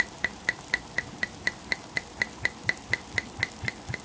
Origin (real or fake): real